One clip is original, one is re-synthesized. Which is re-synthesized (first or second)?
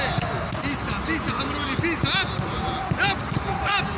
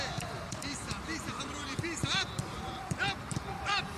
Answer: second